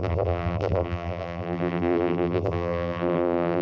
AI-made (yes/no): yes